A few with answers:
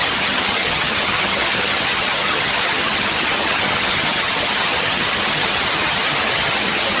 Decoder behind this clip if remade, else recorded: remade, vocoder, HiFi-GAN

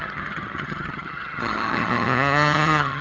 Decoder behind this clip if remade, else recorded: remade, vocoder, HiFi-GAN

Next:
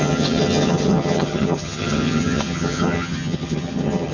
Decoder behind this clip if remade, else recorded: remade, vocoder, HiFi-GAN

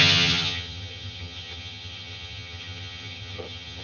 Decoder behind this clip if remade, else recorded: remade, vocoder, HiFi-GAN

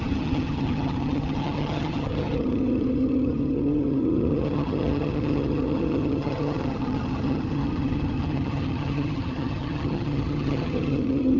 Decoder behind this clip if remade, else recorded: remade, vocoder, HiFi-GAN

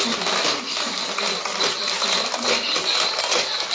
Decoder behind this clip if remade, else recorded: recorded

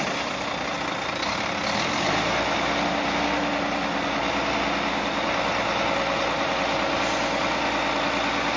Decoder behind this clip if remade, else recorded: recorded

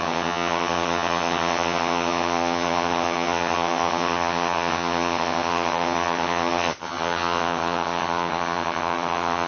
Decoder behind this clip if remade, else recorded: remade, vocoder, HiFi-GAN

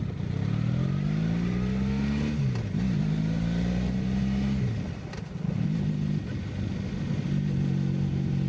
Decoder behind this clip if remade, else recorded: recorded